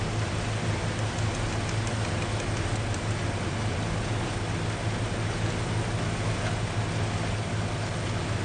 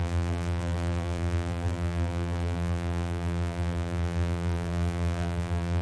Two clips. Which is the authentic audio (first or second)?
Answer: first